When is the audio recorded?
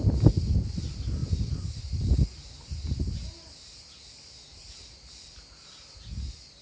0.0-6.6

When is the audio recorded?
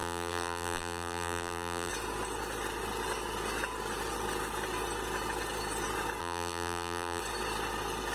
1.9-6.2; 7.2-8.1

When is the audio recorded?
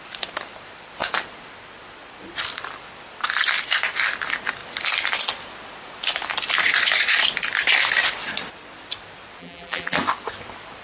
0.0-9.4; 10.0-10.8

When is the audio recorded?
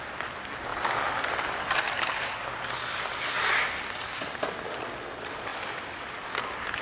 0.0-5.5; 6.3-6.8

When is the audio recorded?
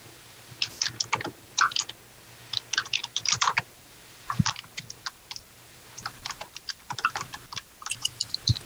0.0-3.0; 7.9-8.7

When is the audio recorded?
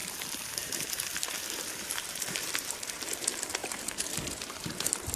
none